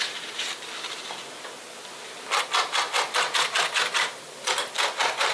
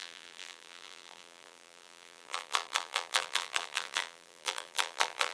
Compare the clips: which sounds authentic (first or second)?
first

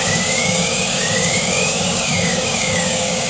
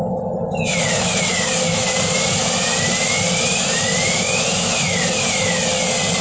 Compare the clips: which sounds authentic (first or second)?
second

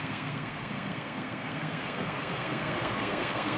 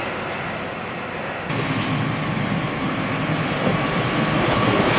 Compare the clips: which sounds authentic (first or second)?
second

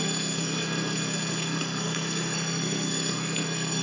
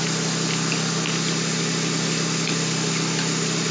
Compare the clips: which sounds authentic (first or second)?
second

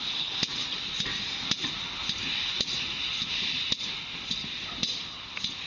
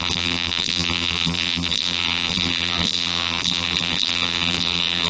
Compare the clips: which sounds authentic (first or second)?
first